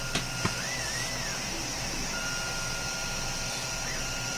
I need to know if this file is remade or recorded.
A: recorded